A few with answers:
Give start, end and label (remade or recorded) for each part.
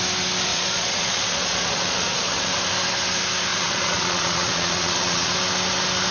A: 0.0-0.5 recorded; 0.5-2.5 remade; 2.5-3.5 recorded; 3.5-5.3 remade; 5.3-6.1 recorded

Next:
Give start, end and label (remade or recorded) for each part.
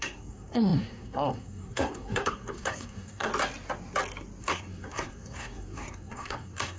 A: 0.0-3.3 remade; 3.3-4.4 recorded; 4.4-6.8 remade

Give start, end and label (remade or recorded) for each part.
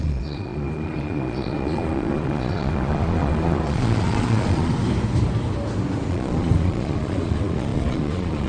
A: 0.0-4.7 remade; 4.7-6.1 recorded; 6.1-8.5 remade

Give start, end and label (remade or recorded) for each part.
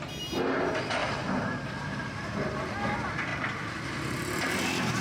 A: 0.0-5.0 recorded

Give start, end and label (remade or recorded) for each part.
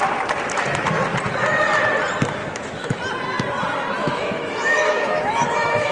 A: 0.0-2.4 recorded; 2.4-3.0 remade; 3.0-4.0 recorded; 4.0-5.9 remade